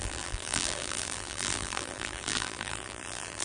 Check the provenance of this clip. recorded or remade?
remade